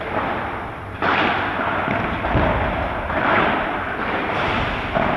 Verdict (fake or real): real